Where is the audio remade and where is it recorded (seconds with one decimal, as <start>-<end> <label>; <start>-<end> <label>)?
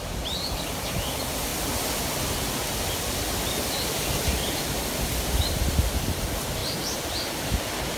0.0-6.6 recorded; 6.6-7.6 remade; 7.6-8.0 recorded